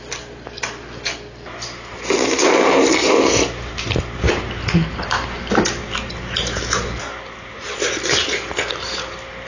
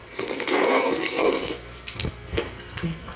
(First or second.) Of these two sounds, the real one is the first